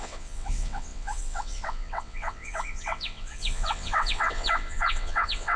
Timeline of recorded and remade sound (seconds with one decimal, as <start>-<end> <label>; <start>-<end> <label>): 0.0-5.6 remade